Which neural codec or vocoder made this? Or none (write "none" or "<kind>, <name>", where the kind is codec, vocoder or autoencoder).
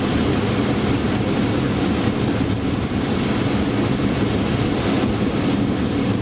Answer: none